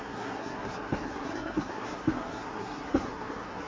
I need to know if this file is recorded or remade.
remade